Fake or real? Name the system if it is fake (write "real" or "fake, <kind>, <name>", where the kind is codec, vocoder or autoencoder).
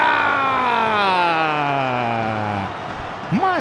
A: real